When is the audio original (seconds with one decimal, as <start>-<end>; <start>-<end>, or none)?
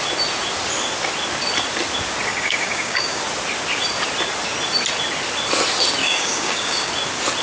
0.0-2.3; 3.2-6.0; 6.9-7.4